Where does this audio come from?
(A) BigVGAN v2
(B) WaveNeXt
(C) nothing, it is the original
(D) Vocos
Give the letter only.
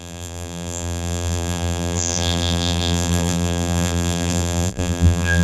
A